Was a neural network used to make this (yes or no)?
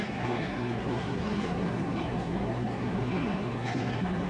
yes